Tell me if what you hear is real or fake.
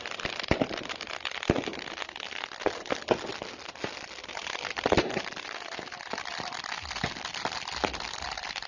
real